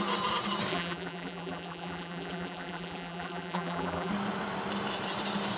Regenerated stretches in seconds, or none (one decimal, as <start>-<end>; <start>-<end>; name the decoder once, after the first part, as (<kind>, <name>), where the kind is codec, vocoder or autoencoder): 0.7-4.1 (vocoder, BigVGAN v2)